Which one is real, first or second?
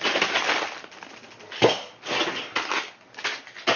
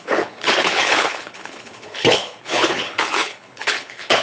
first